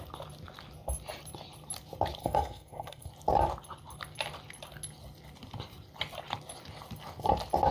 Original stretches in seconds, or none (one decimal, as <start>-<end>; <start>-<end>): 0.0-2.2; 3.1-7.7